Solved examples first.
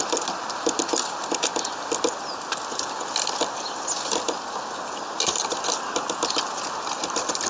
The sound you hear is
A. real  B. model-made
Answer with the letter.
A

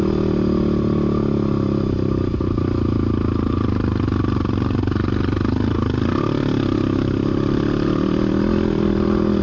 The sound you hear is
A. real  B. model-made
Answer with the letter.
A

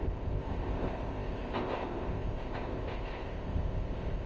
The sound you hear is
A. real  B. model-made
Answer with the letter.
B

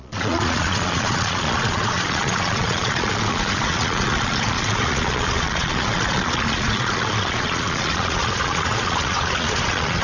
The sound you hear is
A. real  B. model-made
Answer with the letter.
B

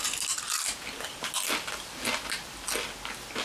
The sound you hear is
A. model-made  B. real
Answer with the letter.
B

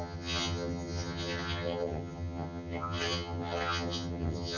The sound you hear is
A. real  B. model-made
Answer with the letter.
B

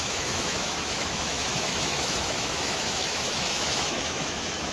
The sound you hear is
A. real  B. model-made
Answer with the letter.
B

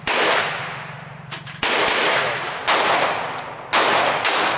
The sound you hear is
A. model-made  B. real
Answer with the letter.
B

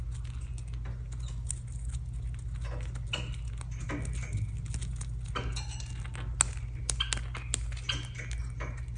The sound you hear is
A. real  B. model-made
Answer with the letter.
A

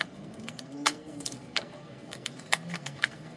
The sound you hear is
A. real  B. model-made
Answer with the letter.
B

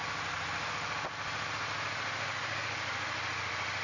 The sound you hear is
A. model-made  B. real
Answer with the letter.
B